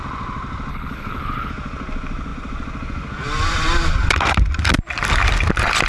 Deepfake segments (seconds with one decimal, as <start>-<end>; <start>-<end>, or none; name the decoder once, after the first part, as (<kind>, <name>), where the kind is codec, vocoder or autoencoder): 0.7-1.5 (codec, HILCodec)